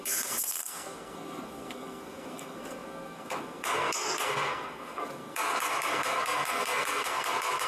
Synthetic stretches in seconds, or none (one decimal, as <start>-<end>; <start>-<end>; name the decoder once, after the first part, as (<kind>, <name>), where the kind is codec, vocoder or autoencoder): 0.0-7.7 (codec, SNAC)